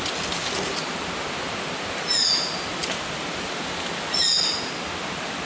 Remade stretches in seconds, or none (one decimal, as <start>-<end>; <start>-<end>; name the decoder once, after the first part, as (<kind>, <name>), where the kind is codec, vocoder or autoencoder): none